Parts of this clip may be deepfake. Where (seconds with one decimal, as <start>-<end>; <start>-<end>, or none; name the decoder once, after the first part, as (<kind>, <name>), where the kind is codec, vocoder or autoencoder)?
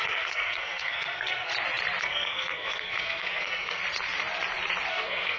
0.0-1.5 (codec, SNAC); 2.0-3.8; 4.9-5.4